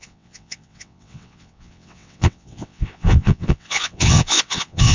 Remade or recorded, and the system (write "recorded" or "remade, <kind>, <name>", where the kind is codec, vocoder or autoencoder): remade, vocoder, WaveNeXt